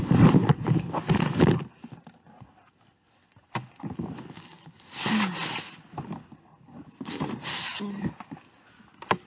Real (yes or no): yes